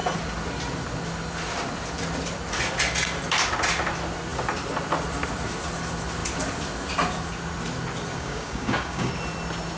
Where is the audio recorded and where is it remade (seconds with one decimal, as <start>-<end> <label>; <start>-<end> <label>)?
0.0-8.1 recorded; 8.1-9.1 remade; 9.1-9.8 recorded

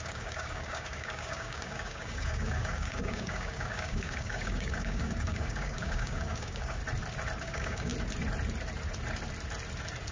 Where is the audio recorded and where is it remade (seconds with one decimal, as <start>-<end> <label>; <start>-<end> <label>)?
0.0-6.8 remade; 6.8-7.4 recorded; 7.4-7.9 remade; 7.9-10.1 recorded

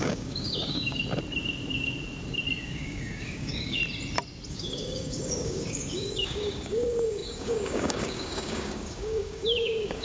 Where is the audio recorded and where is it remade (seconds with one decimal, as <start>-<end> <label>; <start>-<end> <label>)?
0.0-1.0 remade; 1.0-2.6 recorded; 2.6-3.8 remade; 3.8-4.5 recorded; 4.5-10.0 remade

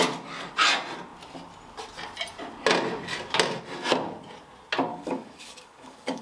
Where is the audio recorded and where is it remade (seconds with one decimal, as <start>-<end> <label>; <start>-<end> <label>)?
0.0-4.9 recorded; 4.9-6.2 remade